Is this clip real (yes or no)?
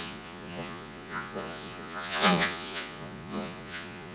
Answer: no